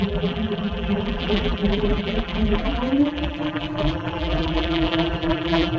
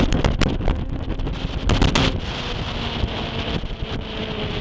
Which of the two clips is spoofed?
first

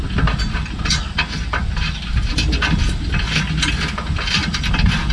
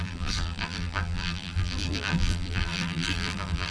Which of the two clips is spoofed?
second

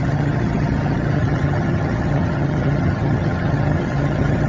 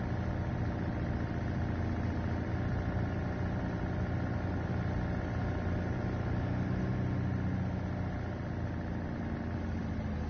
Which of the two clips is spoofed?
first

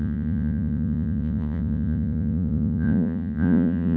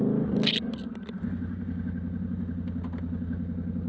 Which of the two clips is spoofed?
first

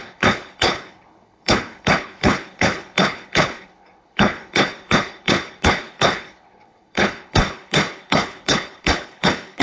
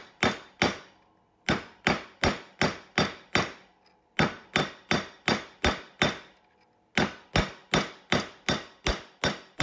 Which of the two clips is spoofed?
first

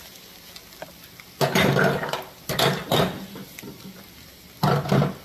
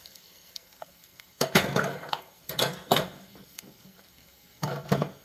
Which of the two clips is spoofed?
second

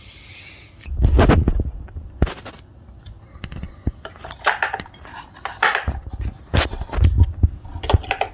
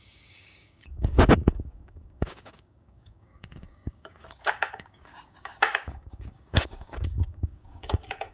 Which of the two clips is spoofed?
second